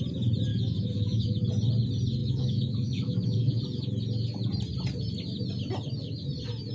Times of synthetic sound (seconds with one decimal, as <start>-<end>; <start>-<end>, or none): 0.5-1.5; 2.2-3.6